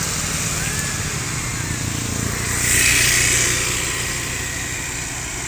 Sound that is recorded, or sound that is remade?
recorded